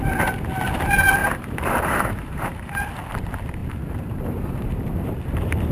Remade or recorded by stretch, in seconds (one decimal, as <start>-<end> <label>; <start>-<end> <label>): 0.0-1.2 recorded; 1.2-2.9 remade; 2.9-3.6 recorded; 3.6-5.1 remade; 5.1-5.7 recorded